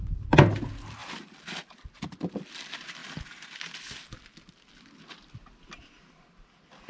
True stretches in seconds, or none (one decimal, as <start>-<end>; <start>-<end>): 0.0-6.9